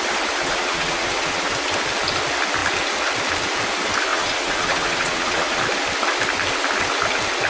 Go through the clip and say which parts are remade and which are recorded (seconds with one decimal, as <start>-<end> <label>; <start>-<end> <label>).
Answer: 0.0-0.4 recorded; 0.4-1.4 remade; 1.4-4.1 recorded; 4.1-5.6 remade; 5.6-7.5 recorded